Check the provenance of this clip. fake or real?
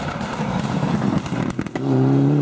real